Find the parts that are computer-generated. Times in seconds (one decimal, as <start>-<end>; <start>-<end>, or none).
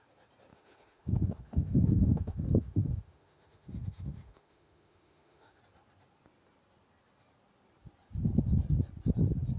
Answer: 0.5-5.6